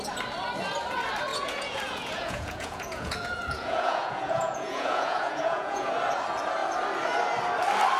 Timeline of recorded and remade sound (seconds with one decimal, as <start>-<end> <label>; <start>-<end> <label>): 0.0-1.3 recorded; 1.3-5.9 remade; 5.9-8.0 recorded